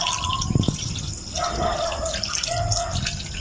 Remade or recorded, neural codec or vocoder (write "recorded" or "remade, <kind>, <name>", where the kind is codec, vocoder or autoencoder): recorded